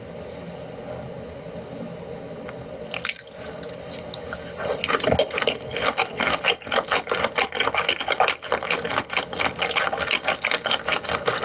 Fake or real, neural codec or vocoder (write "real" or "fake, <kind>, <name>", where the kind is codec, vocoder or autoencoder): real